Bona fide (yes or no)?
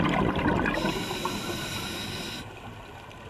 yes